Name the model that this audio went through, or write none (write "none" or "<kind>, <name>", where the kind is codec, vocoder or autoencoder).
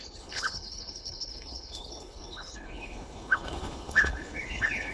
codec, HILCodec